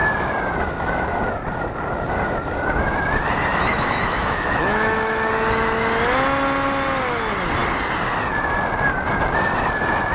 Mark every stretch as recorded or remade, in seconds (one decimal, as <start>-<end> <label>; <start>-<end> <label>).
0.0-3.5 recorded; 3.5-5.3 remade; 5.3-10.1 recorded